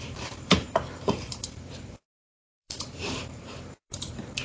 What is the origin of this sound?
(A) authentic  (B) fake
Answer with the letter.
B